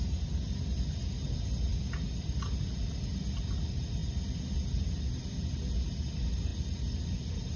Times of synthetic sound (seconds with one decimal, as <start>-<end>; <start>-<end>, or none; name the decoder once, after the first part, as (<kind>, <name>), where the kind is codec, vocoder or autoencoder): none